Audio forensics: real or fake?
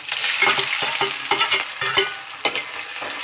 real